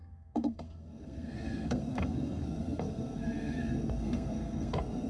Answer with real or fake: fake